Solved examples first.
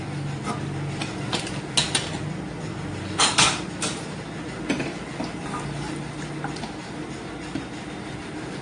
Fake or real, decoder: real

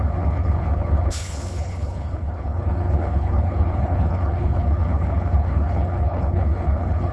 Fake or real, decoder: fake, codec, HILCodec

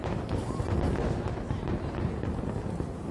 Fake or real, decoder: real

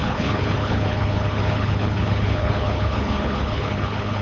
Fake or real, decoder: fake, codec, HILCodec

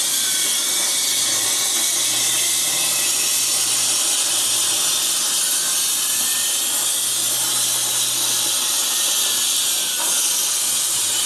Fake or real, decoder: real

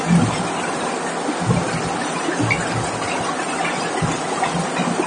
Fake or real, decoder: real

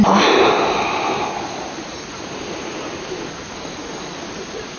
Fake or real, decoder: real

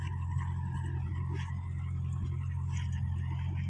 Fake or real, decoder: real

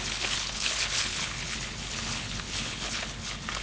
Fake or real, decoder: fake, codec, HILCodec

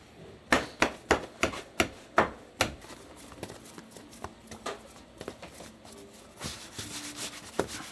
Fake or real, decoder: real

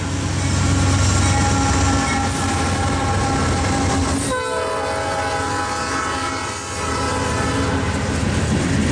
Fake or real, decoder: real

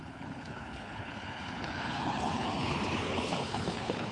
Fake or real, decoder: fake, codec, HILCodec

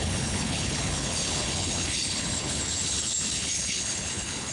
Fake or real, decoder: fake, codec, HILCodec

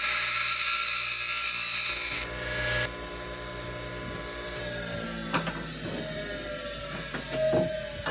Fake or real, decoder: real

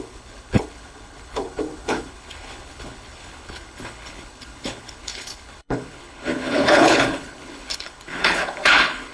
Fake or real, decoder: fake, codec, HILCodec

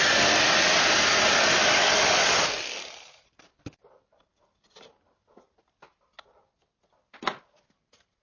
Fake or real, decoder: real